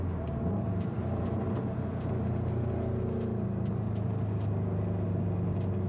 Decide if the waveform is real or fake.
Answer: real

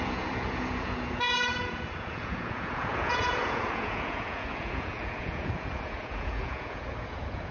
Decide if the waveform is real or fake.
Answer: fake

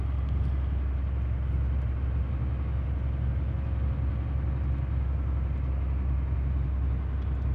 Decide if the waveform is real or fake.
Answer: real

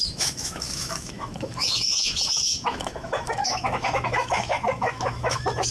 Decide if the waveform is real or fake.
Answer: fake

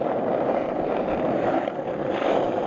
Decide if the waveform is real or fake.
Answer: fake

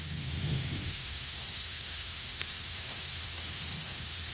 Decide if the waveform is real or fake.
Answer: fake